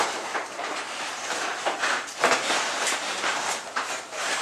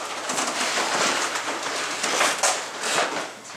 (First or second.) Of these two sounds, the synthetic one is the first